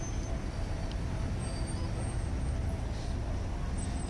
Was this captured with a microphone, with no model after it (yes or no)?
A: yes